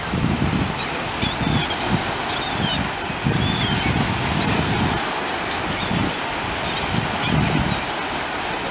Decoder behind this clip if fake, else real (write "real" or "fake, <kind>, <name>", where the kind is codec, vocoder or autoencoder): real